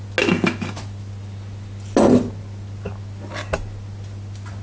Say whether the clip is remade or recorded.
recorded